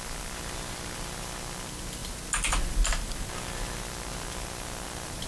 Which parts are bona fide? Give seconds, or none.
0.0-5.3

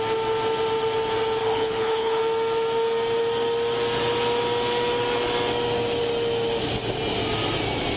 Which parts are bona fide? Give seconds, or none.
0.0-1.4; 2.2-8.0

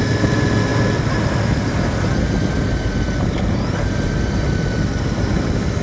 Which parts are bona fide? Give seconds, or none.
0.0-5.8

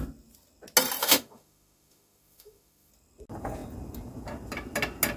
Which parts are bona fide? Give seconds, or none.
0.0-1.0; 2.9-5.2

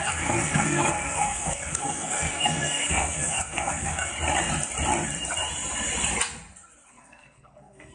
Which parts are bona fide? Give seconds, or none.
4.1-6.9

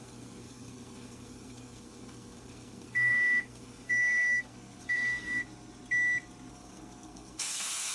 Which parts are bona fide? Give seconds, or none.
5.4-6.5